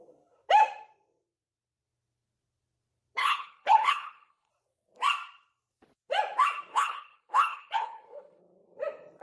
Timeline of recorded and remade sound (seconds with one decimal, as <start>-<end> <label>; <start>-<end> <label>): 0.0-3.2 recorded; 3.2-4.5 remade; 4.5-6.7 recorded; 6.7-8.4 remade; 8.4-9.2 recorded